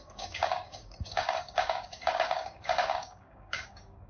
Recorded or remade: remade